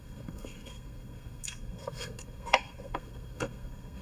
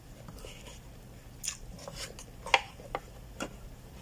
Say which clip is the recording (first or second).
second